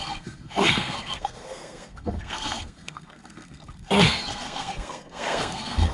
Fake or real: fake